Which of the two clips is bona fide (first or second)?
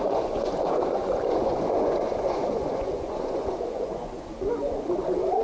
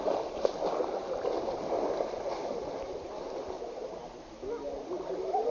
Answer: second